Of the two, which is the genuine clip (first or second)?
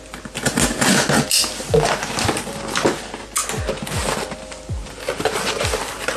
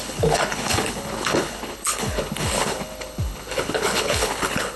first